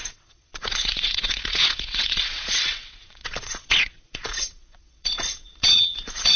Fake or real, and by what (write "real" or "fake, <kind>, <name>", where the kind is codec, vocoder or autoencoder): fake, vocoder, WaveNeXt